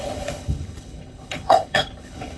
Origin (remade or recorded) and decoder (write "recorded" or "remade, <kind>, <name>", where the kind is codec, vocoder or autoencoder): remade, codec, HILCodec